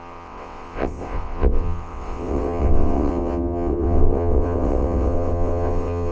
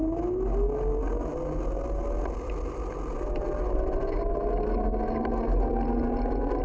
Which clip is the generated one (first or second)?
first